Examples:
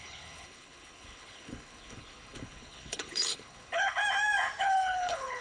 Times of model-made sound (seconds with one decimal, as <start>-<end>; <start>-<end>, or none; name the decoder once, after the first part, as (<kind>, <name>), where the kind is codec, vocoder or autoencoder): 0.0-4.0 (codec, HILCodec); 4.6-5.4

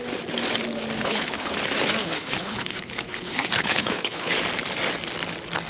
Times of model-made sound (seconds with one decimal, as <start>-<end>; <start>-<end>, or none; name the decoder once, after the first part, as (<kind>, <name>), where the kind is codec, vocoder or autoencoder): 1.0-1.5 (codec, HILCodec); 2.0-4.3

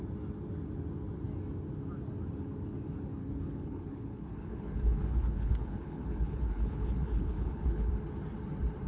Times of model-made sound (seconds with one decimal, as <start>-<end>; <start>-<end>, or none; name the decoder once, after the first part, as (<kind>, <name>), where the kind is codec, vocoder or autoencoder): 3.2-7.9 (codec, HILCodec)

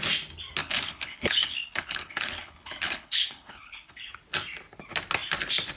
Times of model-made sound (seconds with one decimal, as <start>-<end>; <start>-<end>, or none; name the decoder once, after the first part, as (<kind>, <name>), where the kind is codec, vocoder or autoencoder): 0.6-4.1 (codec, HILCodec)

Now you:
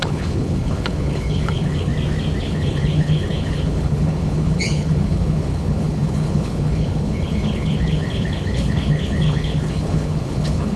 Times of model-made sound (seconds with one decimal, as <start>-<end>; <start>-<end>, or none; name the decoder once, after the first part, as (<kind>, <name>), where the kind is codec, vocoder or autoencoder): 0.0-1.9 (codec, HILCodec); 2.4-10.8